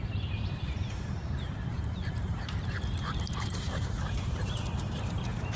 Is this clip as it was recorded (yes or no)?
no